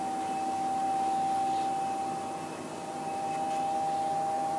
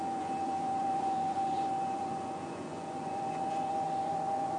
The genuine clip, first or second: first